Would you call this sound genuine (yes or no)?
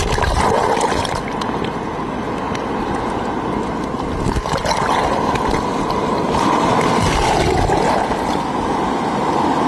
yes